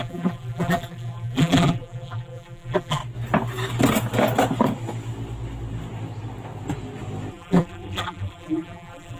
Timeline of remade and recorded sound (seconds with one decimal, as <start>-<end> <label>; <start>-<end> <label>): 0.0-3.0 remade; 3.0-7.3 recorded; 7.3-9.2 remade